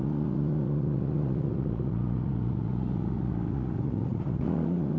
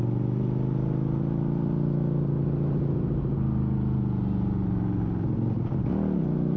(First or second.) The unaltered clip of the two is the second